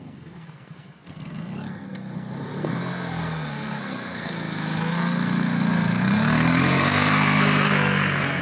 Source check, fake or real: fake